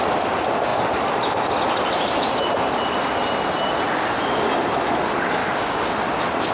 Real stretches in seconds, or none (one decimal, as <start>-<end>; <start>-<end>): 0.0-5.4; 5.9-6.5